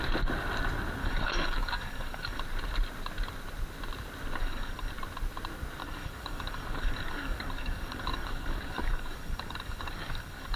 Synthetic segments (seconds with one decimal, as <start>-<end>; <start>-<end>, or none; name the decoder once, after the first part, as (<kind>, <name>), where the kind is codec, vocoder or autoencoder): 1.0-2.4 (codec, DAC); 4.4-4.9; 5.8-10.6